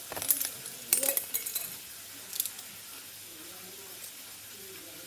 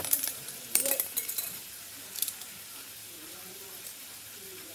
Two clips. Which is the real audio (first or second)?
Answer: first